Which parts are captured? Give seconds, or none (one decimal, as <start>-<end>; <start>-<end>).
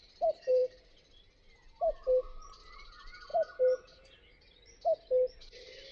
0.0-5.9